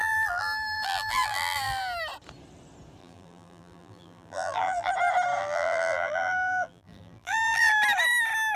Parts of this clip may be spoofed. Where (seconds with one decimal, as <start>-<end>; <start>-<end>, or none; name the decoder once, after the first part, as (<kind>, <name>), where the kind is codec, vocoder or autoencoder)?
0.0-1.8 (vocoder, BigVGAN v2); 3.0-4.9; 5.4-7.6